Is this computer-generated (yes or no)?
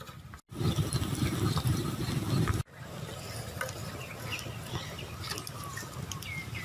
no